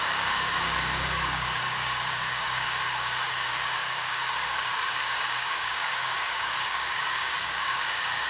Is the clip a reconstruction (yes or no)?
yes